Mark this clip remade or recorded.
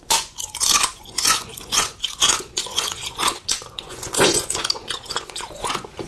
remade